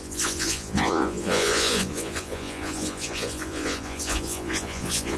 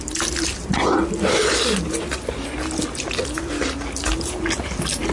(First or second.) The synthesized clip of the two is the first